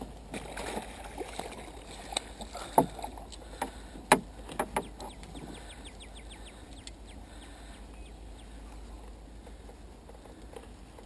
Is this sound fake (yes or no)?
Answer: no